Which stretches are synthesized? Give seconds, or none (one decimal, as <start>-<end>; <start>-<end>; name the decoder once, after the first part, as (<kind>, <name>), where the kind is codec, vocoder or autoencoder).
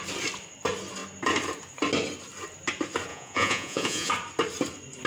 3.1-4.1 (vocoder, Vocos)